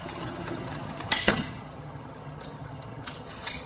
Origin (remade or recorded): remade